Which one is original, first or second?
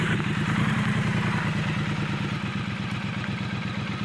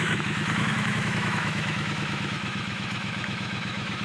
first